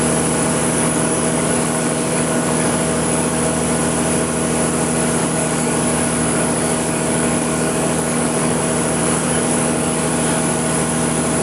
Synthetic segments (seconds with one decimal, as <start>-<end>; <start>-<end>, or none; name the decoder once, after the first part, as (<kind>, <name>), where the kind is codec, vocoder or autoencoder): 0.6-3.3 (codec, DAC); 5.2-8.6; 9.0-10.1